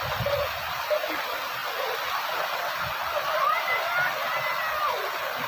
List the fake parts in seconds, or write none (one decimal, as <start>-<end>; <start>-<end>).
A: 0.0-1.6; 2.8-5.5